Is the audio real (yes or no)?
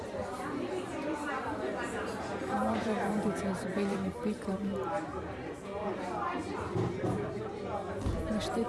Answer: no